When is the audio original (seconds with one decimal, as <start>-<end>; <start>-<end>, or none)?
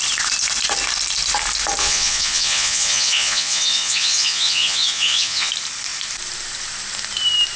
0.0-1.8; 5.5-7.6